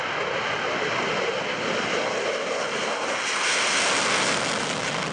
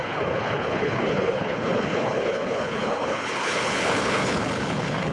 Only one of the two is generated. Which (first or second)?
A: second